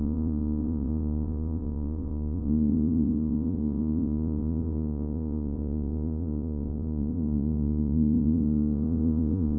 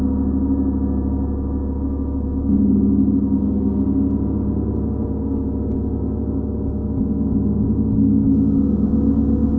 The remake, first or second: first